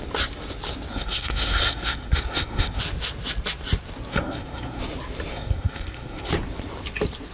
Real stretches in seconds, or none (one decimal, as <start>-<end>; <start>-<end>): 0.0-0.9; 2.8-4.1; 4.8-5.3; 6.3-7.3